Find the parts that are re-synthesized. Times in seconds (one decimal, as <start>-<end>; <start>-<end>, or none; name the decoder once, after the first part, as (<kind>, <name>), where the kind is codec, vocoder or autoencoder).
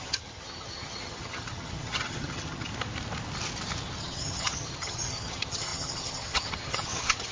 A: 0.0-2.7 (vocoder, HiFi-GAN); 4.0-7.3